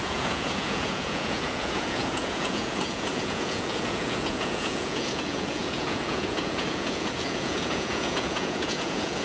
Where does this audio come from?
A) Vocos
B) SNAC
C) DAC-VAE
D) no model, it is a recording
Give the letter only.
A